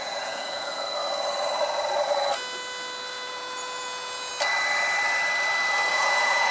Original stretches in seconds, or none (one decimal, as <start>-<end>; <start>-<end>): 1.0-3.1; 4.3-5.9